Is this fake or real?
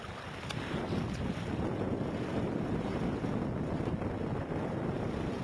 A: real